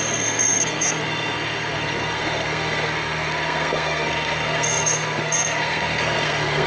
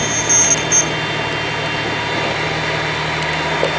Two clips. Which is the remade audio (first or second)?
first